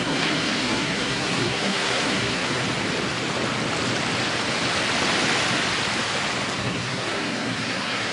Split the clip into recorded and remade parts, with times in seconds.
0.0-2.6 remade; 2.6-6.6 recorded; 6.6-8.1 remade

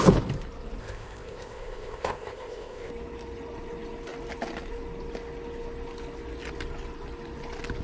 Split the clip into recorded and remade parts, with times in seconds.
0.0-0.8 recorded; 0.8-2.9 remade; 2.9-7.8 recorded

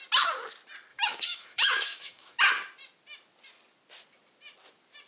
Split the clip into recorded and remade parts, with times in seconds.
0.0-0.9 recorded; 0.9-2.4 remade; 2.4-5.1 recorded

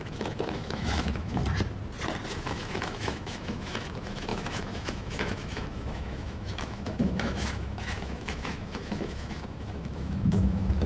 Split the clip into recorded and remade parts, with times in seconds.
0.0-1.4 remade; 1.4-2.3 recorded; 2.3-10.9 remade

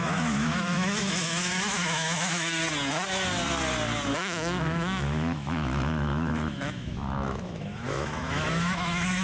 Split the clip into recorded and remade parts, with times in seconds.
0.0-2.6 remade; 2.6-4.2 recorded; 4.2-9.2 remade

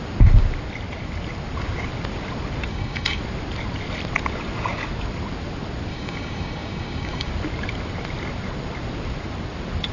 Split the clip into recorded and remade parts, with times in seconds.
0.0-2.7 recorded; 2.7-3.2 remade; 3.2-5.9 recorded; 5.9-7.3 remade; 7.3-9.9 recorded

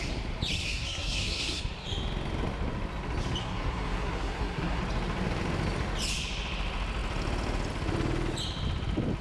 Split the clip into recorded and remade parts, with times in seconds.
0.0-0.6 recorded; 0.6-1.6 remade; 1.6-3.4 recorded; 3.4-4.8 remade; 4.8-9.2 recorded